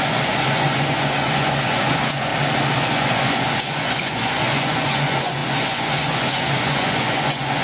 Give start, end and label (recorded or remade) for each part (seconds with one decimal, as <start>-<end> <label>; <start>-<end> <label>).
0.0-2.3 remade; 2.3-2.9 recorded; 2.9-7.6 remade